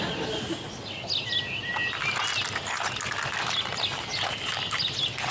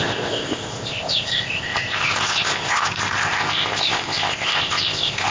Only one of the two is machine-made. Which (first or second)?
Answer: second